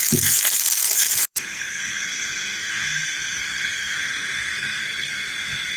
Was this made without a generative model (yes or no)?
no